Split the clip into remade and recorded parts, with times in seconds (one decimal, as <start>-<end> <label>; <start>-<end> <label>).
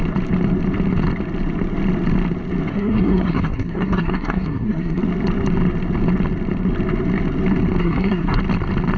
0.0-2.7 recorded; 2.7-5.0 remade; 5.0-7.8 recorded; 7.8-8.4 remade; 8.4-9.0 recorded